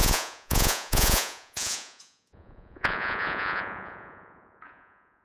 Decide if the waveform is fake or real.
fake